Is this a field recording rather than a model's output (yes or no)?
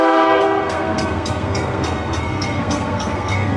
no